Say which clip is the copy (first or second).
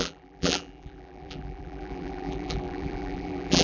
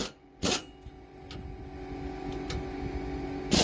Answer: first